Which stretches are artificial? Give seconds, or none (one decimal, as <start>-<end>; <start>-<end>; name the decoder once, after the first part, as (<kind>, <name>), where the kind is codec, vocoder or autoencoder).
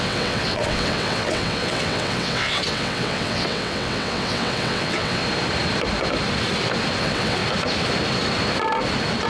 0.0-5.2 (vocoder, WaveNeXt); 7.0-7.4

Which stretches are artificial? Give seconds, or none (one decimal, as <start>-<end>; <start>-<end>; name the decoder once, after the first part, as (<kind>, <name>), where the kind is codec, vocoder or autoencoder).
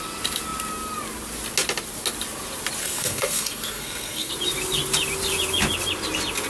2.8-4.3 (codec, SNAC)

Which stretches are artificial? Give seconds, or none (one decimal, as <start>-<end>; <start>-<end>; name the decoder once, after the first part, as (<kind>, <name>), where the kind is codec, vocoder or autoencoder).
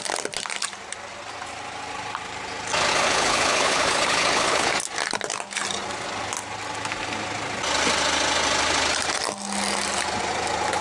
2.9-4.7 (codec, HILCodec)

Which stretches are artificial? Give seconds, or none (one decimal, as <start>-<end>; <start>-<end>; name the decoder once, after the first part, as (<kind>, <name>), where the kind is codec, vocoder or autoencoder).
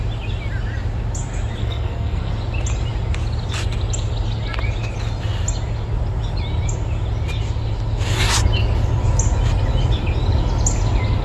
1.6-2.3 (codec, SNAC)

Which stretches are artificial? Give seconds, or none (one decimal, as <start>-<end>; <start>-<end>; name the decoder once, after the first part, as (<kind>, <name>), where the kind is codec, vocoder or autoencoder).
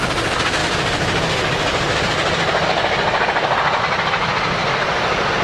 none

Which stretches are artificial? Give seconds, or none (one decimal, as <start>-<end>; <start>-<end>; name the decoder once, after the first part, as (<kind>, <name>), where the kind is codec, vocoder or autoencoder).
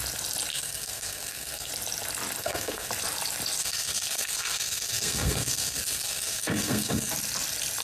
0.5-1.7 (codec, SNAC); 2.4-2.9; 3.6-7.1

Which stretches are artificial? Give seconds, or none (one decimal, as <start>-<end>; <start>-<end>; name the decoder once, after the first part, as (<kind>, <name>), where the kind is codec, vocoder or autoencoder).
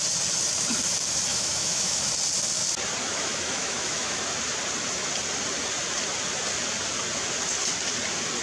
1.3-2.1 (autoencoder, DAC-VAE); 3.0-4.2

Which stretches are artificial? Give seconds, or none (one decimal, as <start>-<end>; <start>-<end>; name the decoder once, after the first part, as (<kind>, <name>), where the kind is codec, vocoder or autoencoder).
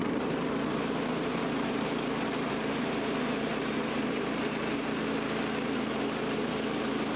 0.0-5.0 (vocoder, BigVGAN v2)